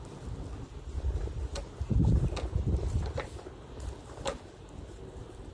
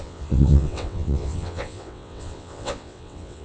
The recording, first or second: first